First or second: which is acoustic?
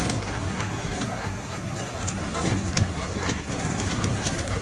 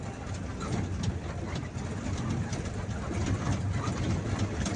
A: second